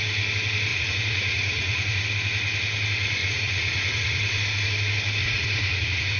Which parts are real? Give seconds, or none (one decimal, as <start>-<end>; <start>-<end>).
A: 0.0-0.7; 2.0-3.2; 4.2-5.2